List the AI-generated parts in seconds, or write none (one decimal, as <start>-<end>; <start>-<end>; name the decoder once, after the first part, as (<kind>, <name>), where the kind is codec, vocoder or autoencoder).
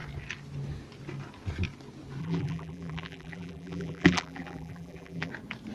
2.2-5.3 (vocoder, BigVGAN v2)